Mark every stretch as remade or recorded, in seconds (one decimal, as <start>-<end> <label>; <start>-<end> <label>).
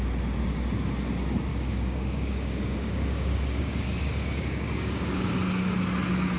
0.0-1.5 recorded; 1.5-5.3 remade; 5.3-6.4 recorded